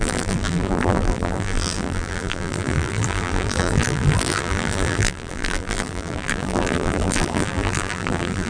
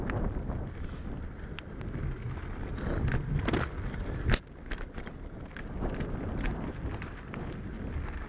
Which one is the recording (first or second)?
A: second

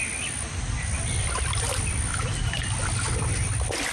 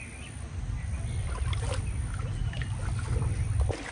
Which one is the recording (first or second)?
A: second